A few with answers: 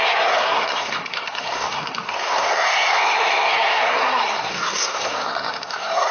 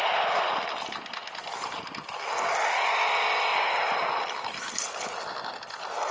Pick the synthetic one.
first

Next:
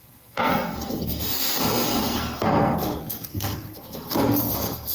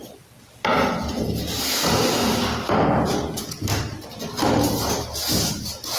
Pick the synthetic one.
first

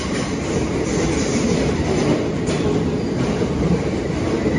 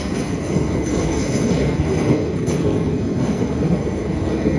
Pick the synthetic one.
second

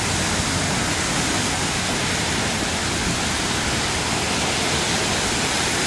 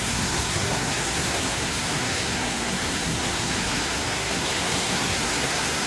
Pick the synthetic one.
second